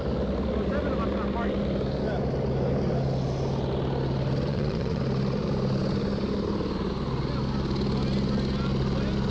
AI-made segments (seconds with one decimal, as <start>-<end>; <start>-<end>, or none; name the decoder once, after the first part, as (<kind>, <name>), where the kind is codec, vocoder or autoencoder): 4.5-5.0 (vocoder, Vocos)